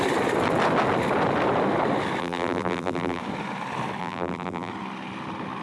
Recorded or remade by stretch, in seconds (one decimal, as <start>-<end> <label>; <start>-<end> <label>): 0.0-2.2 recorded; 2.2-3.2 remade; 3.2-4.0 recorded; 4.0-4.7 remade; 4.7-5.6 recorded